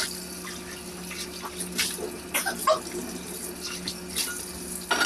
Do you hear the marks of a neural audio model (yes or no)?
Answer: no